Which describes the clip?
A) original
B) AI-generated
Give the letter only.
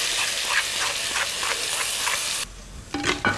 A